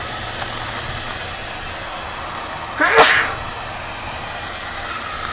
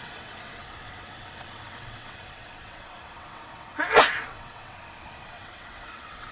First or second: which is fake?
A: second